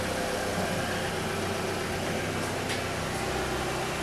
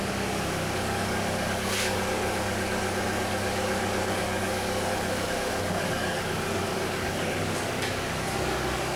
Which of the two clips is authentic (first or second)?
first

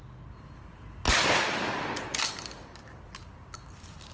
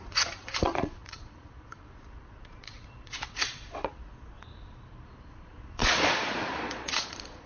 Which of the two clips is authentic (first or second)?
first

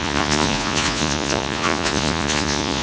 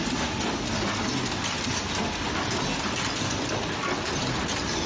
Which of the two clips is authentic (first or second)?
second